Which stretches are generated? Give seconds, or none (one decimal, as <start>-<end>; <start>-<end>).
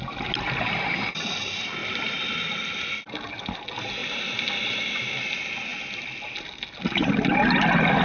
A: 1.8-2.6; 4.0-4.5